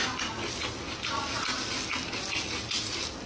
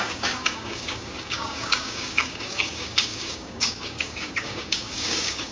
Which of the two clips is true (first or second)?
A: first